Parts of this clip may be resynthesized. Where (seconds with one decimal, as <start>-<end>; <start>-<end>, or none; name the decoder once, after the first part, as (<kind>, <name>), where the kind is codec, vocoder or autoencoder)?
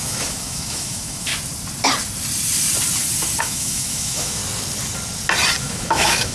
0.0-1.3 (autoencoder, DAC-VAE); 3.4-4.4; 5.6-6.3